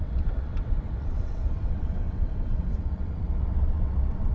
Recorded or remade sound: remade